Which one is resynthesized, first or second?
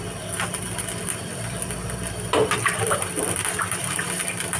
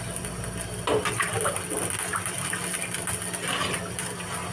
first